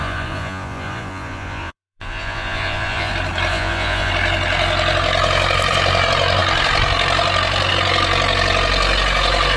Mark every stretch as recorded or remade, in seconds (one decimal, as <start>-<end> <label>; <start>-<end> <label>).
0.0-3.1 remade; 3.1-3.5 recorded; 3.5-4.1 remade; 4.1-9.6 recorded